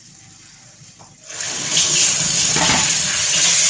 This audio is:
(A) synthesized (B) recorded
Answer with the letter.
B